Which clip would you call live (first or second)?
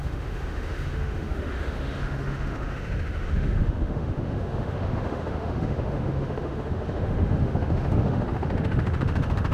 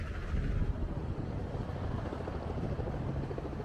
second